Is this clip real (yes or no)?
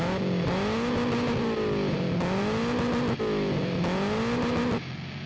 yes